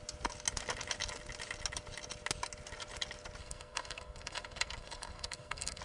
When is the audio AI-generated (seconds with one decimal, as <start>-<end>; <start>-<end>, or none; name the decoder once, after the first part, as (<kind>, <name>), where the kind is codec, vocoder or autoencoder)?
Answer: 3.4-5.8 (codec, SNAC)